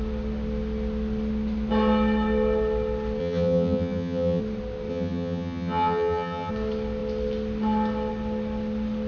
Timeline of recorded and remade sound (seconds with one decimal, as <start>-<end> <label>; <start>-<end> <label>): 0.0-3.2 recorded; 3.2-4.4 remade; 4.4-4.9 recorded; 4.9-6.5 remade; 6.5-9.1 recorded